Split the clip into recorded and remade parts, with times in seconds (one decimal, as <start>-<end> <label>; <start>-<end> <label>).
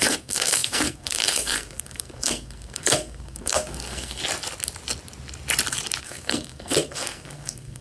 0.0-4.2 remade; 4.2-6.0 recorded; 6.0-7.8 remade